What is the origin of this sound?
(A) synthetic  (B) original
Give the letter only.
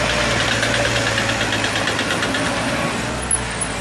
B